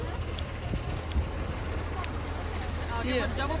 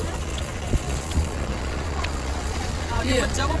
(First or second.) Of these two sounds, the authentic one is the first